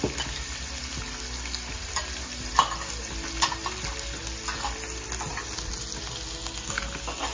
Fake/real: real